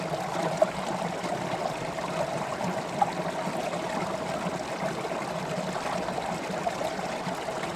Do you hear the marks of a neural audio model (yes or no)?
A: no